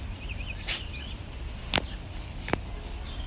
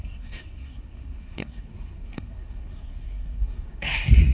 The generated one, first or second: second